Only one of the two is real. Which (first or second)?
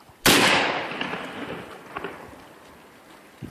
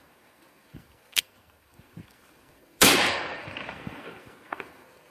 first